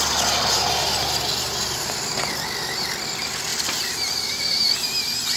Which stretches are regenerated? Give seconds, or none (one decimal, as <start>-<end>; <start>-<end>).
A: 3.5-4.3